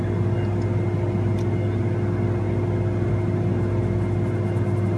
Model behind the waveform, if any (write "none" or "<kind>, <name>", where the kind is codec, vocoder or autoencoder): none